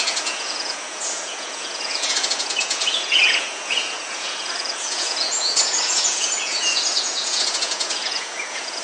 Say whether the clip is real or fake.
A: fake